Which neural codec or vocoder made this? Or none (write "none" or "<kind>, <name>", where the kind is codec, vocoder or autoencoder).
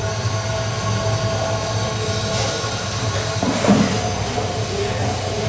none